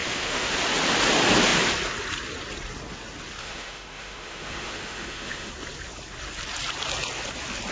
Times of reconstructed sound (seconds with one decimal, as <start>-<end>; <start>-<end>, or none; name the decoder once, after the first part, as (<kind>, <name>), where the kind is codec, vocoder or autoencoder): 0.0-0.5 (autoencoder, DAC-VAE); 3.4-5.5